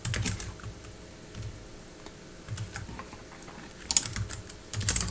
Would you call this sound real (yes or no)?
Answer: yes